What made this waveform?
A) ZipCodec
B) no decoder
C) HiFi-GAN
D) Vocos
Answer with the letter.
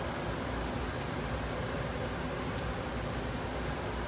B